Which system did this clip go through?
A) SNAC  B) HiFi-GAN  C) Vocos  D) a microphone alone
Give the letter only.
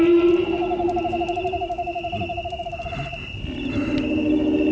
D